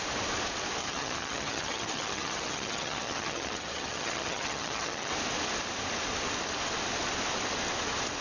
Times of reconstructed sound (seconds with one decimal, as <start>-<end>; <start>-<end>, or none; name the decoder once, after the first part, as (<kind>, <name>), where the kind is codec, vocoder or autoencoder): 0.8-5.1 (vocoder, HiFi-GAN)